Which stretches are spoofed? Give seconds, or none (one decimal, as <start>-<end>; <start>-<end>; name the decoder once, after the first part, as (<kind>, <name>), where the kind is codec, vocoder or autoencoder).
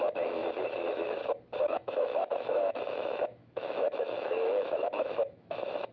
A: 0.0-0.4 (autoencoder, DAC-VAE); 1.6-5.9